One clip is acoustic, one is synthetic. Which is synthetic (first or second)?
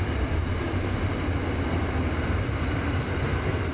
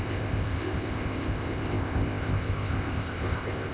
second